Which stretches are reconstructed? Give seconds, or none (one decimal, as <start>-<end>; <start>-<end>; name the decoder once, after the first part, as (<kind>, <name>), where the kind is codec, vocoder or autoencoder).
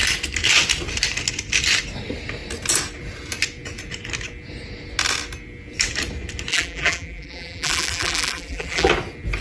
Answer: 6.5-8.9 (vocoder, BigVGAN v2)